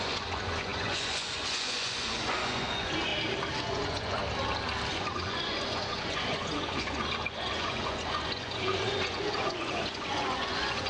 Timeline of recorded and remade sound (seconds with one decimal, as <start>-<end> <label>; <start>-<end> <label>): 0.0-3.1 remade; 3.1-3.6 recorded; 3.6-4.2 remade; 4.2-4.9 recorded; 4.9-10.9 remade